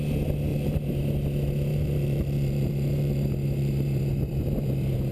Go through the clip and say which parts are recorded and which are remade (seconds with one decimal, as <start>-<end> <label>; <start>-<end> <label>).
0.0-0.5 recorded; 0.5-1.0 remade; 1.0-1.7 recorded; 1.7-5.1 remade